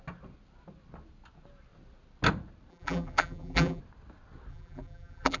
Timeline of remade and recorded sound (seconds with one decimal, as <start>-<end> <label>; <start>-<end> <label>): 0.0-2.7 recorded; 2.7-3.8 remade; 3.8-4.5 recorded; 4.5-5.4 remade